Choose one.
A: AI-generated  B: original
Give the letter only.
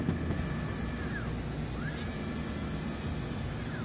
B